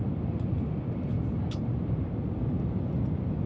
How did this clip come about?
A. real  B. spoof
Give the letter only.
A